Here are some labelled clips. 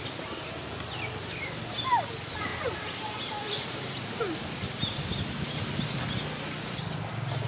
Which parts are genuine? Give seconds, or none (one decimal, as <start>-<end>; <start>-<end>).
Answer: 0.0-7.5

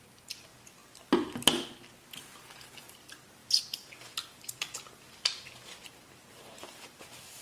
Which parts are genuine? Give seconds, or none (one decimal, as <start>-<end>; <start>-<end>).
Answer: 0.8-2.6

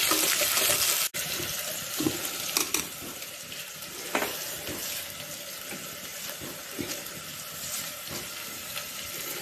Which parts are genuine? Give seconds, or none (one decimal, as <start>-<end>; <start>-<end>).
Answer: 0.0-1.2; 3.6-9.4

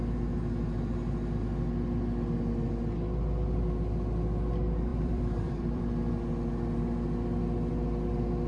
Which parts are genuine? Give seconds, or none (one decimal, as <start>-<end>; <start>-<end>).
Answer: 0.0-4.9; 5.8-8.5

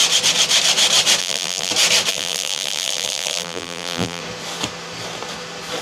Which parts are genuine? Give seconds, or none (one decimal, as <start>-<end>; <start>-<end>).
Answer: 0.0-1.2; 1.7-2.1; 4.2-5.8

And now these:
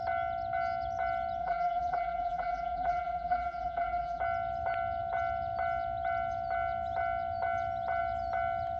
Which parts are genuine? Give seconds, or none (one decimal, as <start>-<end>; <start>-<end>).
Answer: 0.0-1.4; 4.2-8.8

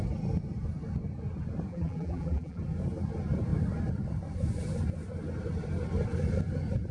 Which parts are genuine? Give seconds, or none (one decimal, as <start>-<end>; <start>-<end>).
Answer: 0.0-1.7; 2.6-6.9

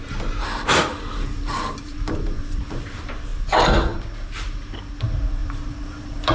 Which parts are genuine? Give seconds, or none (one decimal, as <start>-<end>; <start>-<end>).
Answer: 3.3-4.3